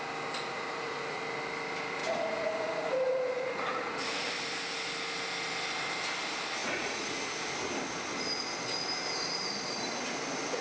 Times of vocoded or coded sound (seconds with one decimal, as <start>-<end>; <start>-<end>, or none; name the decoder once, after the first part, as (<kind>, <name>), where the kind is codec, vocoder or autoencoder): 0.5-1.2 (vocoder, Vocos); 2.0-4.2; 6.6-7.3